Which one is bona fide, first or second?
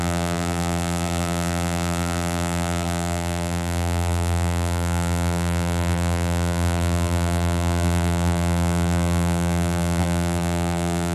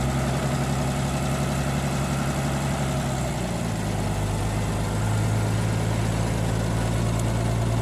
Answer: second